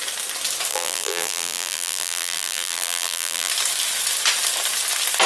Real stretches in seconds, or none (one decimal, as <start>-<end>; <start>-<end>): 0.0-0.7; 3.5-5.3